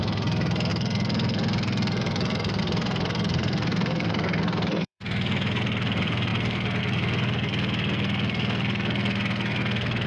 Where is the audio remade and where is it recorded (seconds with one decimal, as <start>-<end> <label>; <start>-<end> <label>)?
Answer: 0.0-10.1 remade